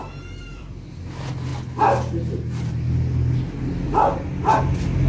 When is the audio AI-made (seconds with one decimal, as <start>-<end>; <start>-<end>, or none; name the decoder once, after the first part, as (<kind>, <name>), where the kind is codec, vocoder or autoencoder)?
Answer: none